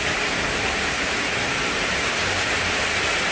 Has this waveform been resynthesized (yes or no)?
no